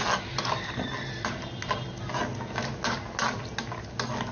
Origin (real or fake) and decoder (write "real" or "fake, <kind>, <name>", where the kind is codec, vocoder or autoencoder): real